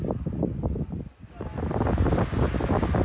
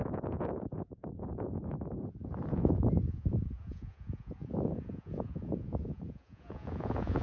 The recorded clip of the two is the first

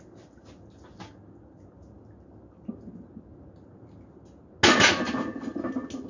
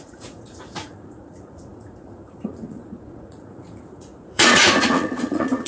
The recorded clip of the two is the first